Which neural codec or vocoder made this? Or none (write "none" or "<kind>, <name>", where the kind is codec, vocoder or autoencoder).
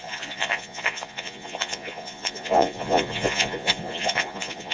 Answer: vocoder, Vocos